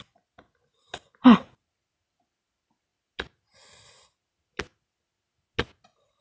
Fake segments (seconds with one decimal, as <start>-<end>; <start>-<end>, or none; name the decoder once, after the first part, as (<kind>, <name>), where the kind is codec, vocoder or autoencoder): none